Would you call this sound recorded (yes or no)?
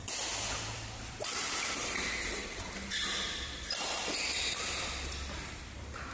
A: no